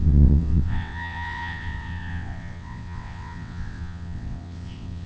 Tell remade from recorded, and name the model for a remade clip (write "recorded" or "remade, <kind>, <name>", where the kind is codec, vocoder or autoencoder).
remade, vocoder, WaveNeXt